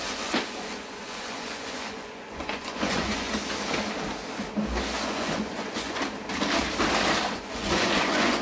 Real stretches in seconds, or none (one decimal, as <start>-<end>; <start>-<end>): 3.3-5.0; 6.0-7.3